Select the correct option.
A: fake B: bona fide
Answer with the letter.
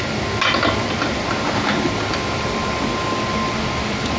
B